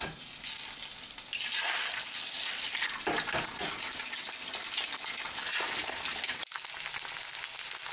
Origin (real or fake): real